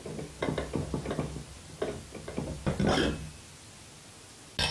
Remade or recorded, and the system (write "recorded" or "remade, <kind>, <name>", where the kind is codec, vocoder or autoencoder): recorded